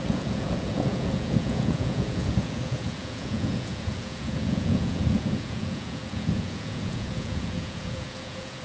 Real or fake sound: fake